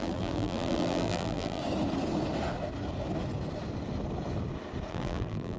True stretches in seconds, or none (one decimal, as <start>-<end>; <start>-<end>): 1.6-4.9